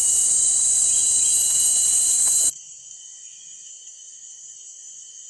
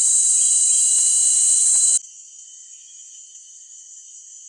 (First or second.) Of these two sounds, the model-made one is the first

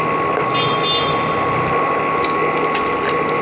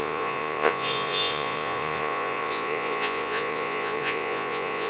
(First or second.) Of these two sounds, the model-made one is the second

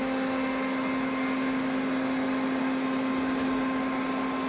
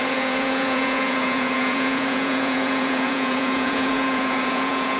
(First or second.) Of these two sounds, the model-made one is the second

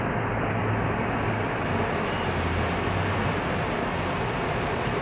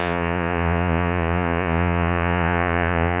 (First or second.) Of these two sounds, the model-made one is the second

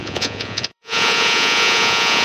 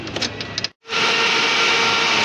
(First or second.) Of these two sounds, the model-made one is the first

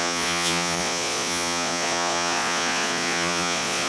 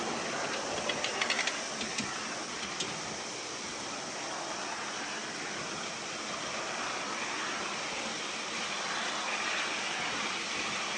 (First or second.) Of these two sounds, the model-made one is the first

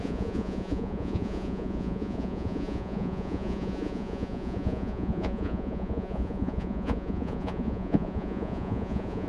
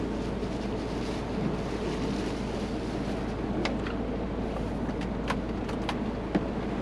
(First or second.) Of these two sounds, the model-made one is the first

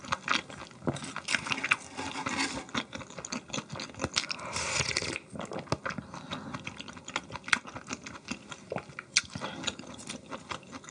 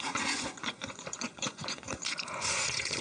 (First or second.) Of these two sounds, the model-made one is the second